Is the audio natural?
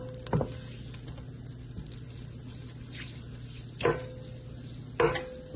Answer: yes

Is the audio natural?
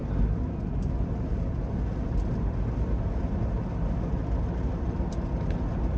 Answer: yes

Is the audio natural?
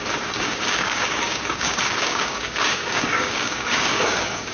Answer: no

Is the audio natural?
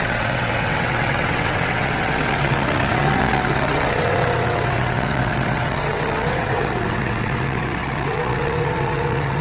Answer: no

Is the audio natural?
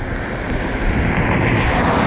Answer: yes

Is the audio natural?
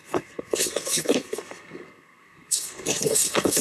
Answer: no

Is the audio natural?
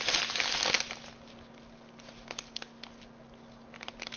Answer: yes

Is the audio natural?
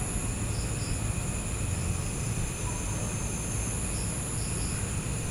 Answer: yes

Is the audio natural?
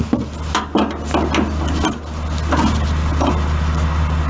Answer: yes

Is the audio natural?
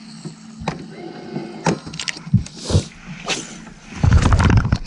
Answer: yes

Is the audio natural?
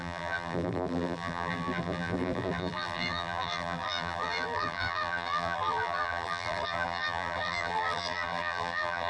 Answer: no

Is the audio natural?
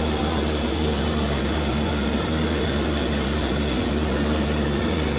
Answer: no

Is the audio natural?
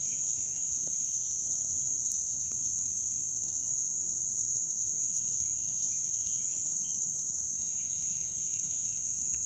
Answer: no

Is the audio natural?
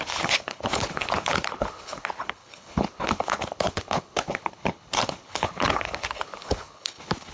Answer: no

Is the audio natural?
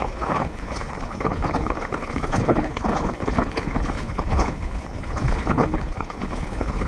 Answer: no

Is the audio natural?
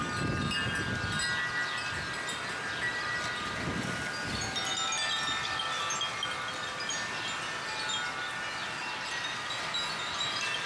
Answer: yes